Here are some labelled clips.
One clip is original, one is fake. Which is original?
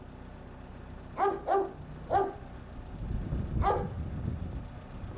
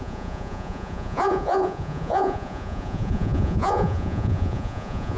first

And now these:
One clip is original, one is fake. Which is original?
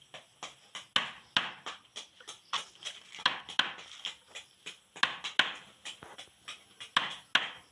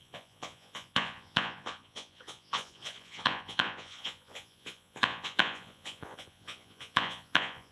first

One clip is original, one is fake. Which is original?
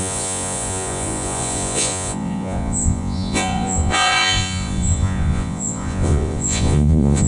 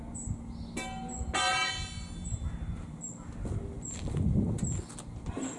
second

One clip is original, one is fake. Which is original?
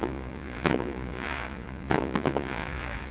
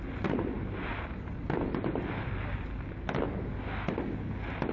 second